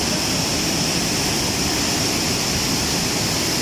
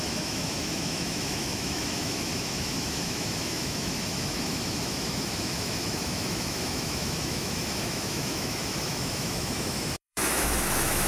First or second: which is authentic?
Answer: first